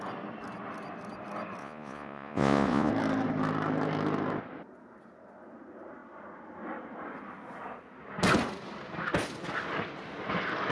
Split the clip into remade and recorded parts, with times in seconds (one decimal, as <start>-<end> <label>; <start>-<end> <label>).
0.0-1.6 recorded; 1.6-2.9 remade; 2.9-10.7 recorded